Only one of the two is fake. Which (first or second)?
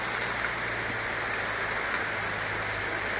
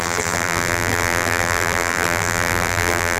second